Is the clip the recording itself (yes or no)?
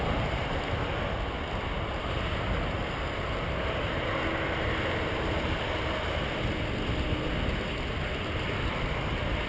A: yes